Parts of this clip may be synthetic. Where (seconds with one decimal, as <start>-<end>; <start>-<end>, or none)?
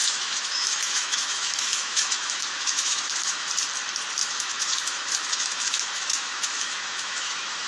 0.0-3.5; 4.2-7.7